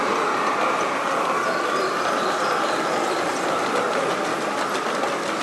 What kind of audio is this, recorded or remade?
recorded